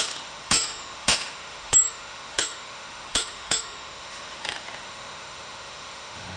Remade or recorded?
remade